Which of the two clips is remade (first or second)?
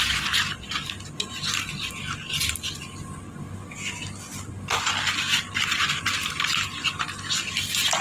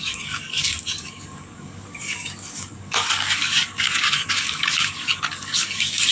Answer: second